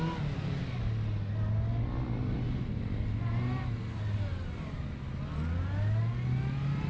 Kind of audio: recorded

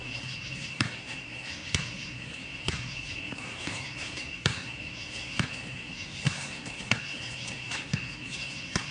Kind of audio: remade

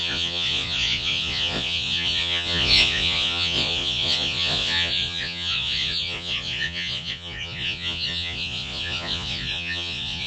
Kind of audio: remade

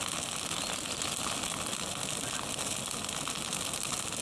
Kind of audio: recorded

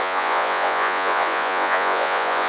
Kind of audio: remade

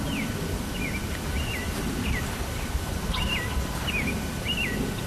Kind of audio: recorded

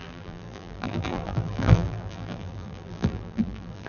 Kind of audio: remade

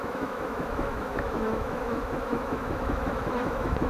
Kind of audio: remade